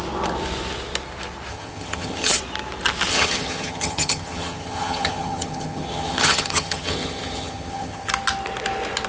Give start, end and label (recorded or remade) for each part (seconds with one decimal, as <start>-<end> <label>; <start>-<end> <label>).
0.0-1.5 recorded; 1.5-2.4 remade; 2.4-3.1 recorded; 3.1-8.1 remade; 8.1-9.1 recorded